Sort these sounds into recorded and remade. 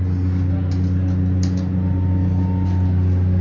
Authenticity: recorded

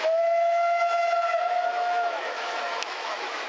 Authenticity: remade